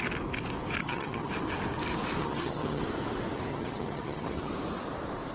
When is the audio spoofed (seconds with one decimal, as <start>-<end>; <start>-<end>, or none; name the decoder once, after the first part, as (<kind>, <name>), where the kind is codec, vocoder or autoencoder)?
0.8-1.3 (vocoder, HiFi-GAN); 2.2-2.8; 3.5-4.5